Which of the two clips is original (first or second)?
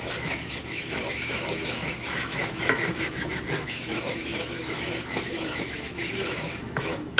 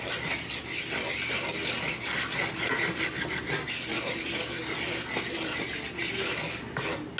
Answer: second